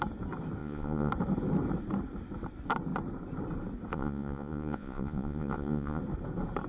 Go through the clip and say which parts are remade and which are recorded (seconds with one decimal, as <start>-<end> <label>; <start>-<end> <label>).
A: 0.0-0.6 recorded; 0.6-1.1 remade; 1.1-3.9 recorded; 3.9-6.0 remade; 6.0-6.7 recorded